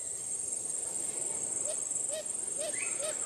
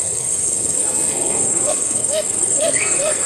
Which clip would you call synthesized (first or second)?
second